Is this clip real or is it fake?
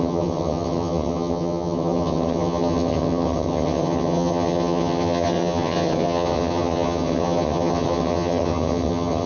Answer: fake